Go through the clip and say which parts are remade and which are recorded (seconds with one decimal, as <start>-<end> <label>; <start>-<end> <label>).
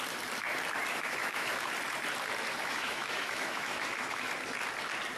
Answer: 0.0-0.9 recorded; 0.9-1.5 remade; 1.5-2.6 recorded; 2.6-4.3 remade; 4.3-5.2 recorded